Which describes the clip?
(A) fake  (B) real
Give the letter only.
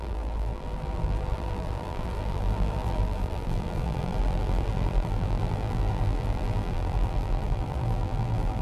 A